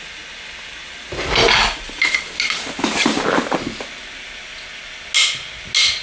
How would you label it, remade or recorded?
recorded